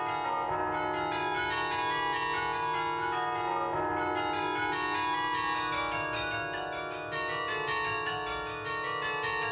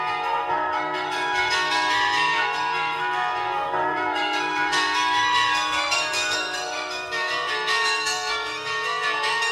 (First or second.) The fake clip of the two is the second